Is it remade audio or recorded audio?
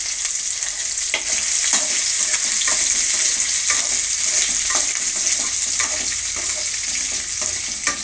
recorded